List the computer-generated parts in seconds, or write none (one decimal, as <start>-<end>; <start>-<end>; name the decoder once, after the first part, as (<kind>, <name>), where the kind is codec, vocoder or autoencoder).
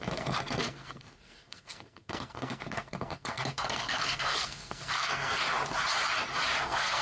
0.0-5.4 (codec, SNAC); 6.6-7.0